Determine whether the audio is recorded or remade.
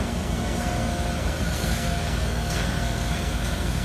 remade